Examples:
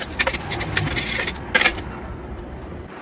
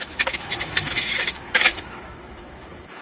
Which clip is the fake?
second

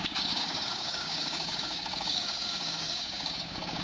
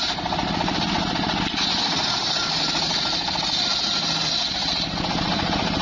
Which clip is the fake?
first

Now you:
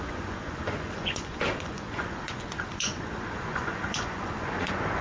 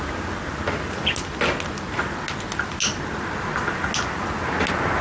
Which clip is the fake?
first